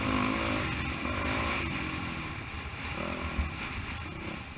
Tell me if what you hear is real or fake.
real